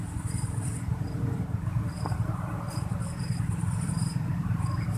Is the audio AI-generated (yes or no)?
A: yes